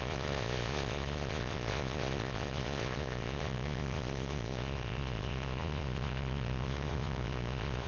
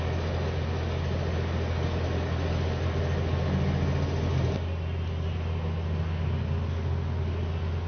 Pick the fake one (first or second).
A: first